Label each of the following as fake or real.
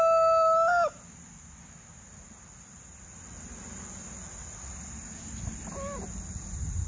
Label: real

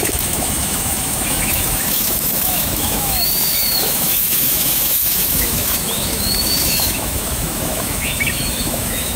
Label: fake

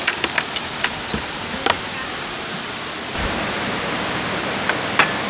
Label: real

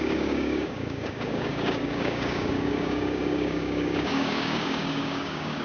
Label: fake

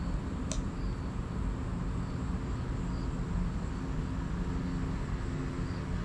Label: real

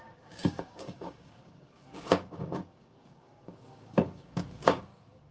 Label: fake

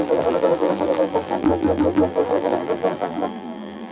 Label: fake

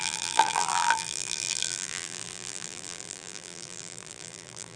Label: fake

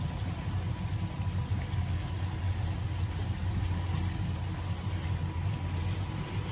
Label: real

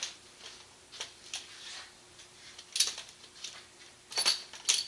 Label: real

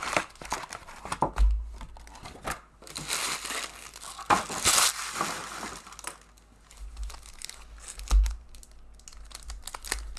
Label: real